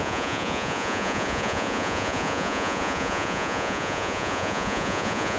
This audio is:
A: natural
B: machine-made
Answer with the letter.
B